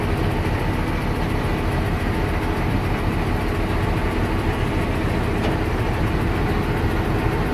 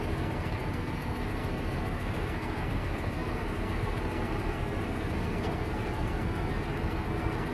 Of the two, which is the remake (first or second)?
second